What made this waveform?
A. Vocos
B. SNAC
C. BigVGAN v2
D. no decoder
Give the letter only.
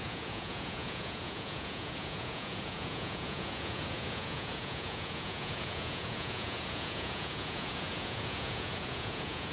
A